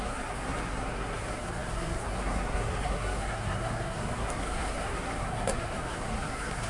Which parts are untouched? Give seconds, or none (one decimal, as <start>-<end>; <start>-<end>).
none